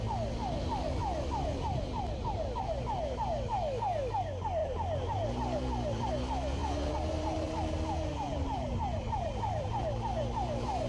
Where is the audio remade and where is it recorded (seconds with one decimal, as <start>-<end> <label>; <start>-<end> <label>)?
0.0-4.6 recorded; 4.6-6.1 remade; 6.1-6.6 recorded; 6.6-10.9 remade

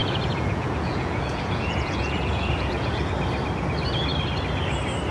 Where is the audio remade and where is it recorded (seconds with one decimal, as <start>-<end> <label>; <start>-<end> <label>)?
0.0-3.1 remade; 3.1-5.1 recorded